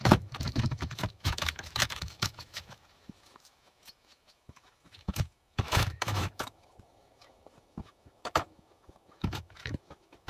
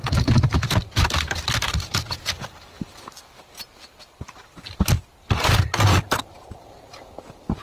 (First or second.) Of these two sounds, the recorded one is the second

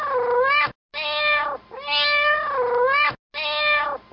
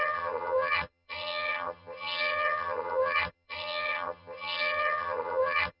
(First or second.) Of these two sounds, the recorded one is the first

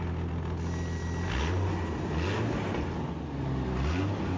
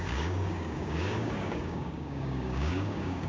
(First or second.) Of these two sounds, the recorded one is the first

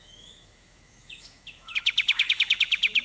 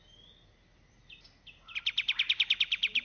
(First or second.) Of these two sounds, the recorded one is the second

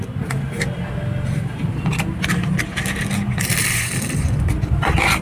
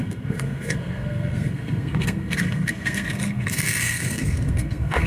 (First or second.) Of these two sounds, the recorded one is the first